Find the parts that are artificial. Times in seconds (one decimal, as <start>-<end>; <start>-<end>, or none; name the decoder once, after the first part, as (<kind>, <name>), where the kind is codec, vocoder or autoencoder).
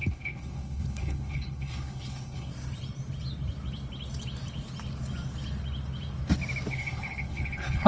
0.0-2.5 (codec, HILCodec); 6.7-7.9